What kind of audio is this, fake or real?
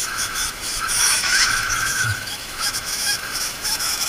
fake